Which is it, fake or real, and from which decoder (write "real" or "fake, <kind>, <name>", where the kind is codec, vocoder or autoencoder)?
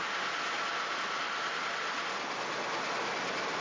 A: real